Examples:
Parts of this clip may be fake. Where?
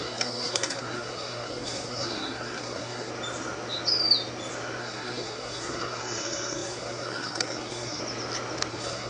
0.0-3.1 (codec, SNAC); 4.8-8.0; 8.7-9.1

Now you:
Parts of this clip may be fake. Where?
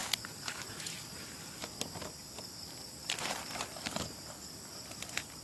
none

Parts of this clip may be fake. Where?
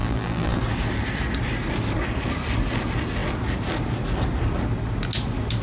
0.0-0.6 (vocoder, BigVGAN v2)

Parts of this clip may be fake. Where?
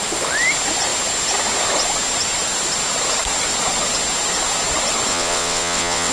5.1-6.1 (vocoder, WaveNeXt)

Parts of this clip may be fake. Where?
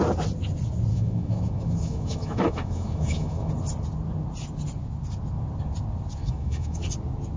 0.9-3.5 (autoencoder, DAC-VAE); 6.2-6.8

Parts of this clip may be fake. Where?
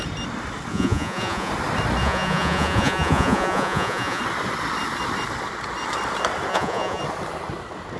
0.7-1.5 (vocoder, Vocos); 2.0-4.2; 6.5-7.0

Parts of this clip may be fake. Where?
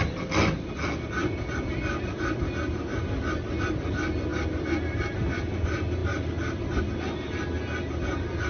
none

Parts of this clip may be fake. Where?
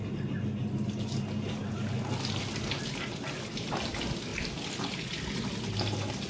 none